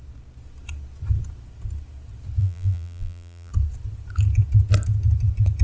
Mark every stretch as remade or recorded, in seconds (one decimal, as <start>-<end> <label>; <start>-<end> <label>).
0.0-2.4 recorded; 2.4-3.5 remade; 3.5-5.6 recorded